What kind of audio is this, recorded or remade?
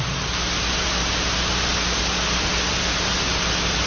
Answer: recorded